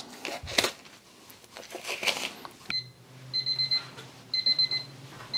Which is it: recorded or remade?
recorded